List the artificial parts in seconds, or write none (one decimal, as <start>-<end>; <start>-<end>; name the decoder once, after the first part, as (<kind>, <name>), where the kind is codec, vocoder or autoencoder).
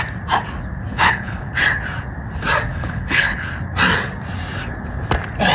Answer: 0.9-1.5 (codec, HILCodec); 2.7-3.5